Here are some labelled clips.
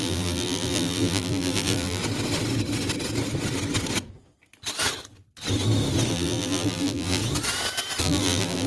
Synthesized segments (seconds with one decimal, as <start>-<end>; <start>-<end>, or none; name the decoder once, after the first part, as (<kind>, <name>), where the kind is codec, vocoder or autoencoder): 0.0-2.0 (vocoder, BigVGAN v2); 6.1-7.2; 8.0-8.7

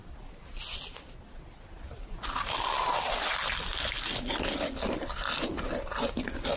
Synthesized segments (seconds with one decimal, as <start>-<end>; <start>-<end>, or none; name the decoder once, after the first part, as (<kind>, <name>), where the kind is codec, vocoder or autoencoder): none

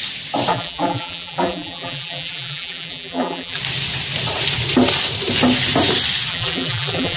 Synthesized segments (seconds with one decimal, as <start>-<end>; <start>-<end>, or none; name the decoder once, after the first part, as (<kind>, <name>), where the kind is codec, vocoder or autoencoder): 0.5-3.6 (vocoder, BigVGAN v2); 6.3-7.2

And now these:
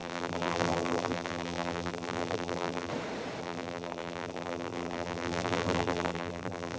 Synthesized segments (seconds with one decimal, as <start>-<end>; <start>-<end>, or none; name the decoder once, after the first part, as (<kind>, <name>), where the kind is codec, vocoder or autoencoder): 0.0-2.9 (vocoder, BigVGAN v2); 3.4-6.8

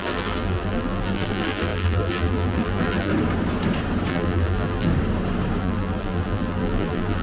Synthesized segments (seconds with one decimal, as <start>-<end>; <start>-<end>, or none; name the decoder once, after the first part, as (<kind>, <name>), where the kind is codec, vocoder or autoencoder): 0.0-3.1 (vocoder, BigVGAN v2); 4.1-4.9; 5.6-7.2

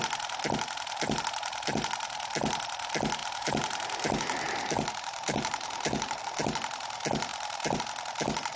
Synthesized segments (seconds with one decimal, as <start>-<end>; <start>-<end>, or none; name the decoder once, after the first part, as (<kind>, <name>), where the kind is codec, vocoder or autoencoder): 3.2-6.2 (vocoder, BigVGAN v2); 7.3-7.8